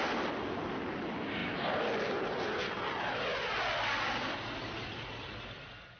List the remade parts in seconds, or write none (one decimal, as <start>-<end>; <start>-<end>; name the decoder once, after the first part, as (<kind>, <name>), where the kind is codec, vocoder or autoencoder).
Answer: none